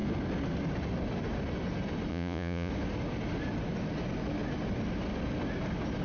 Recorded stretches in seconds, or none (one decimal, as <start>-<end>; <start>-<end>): 0.0-2.1; 2.7-6.0